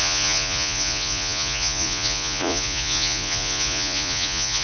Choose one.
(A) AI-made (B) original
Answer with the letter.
A